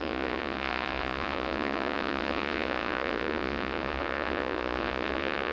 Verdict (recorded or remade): remade